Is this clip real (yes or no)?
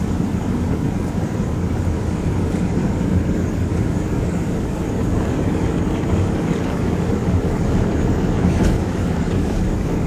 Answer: no